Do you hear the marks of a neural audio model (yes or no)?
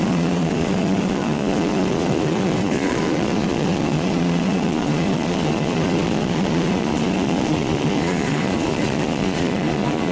yes